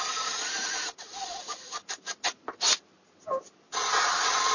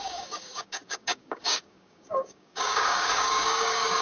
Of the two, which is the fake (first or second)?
second